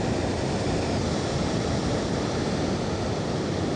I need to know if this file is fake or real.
fake